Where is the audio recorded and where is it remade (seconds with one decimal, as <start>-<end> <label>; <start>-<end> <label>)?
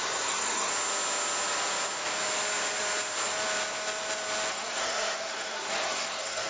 0.0-0.7 remade; 0.7-4.5 recorded; 4.5-6.5 remade